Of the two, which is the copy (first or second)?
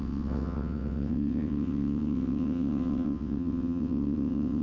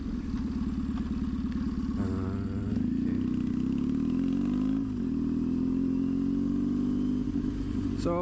first